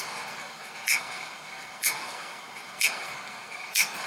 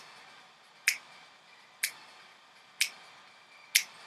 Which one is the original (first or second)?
second